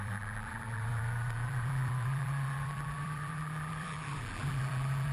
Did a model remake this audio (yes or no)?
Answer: yes